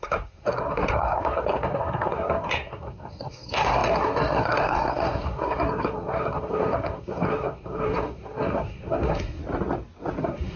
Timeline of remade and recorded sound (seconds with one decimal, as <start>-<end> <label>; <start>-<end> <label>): 0.0-9.4 remade; 9.4-10.2 recorded; 10.2-10.6 remade